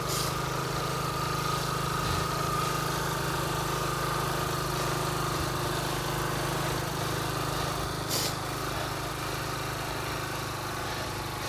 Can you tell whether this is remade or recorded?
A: recorded